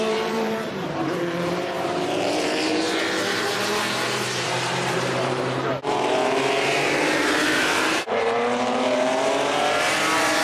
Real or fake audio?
fake